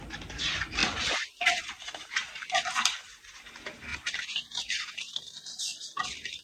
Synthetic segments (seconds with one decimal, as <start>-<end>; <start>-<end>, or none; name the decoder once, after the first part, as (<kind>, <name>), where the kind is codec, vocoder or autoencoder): 3.9-5.0 (vocoder, BigVGAN v2)

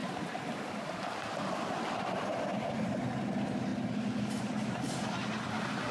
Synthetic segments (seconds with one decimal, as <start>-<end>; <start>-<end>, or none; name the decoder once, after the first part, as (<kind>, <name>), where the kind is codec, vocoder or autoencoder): none

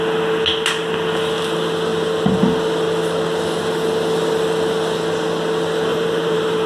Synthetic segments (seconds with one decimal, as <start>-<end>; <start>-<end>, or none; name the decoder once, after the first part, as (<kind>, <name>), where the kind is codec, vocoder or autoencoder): 5.9-6.7 (vocoder, BigVGAN v2)

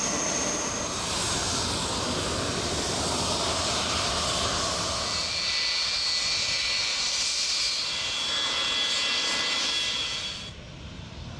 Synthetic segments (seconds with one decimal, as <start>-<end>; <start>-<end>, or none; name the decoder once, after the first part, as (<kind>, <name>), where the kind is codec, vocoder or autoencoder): 6.8-7.6 (vocoder, BigVGAN v2)

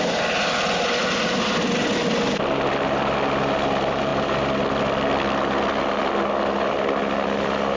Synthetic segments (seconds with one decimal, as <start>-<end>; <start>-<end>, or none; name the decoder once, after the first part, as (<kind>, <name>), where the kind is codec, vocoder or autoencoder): none

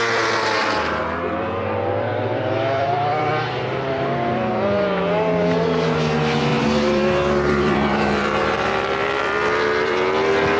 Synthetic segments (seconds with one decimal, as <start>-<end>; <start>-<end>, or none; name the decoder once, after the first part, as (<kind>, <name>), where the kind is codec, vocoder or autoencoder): 0.6-3.3 (vocoder, BigVGAN v2); 6.5-9.2

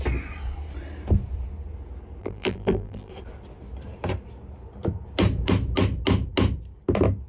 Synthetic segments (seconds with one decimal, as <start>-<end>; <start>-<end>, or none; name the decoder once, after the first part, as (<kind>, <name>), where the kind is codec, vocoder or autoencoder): 2.2-3.1 (vocoder, BigVGAN v2)